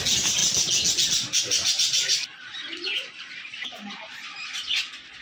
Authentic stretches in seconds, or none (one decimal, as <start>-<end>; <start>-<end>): 0.0-2.5; 4.5-5.2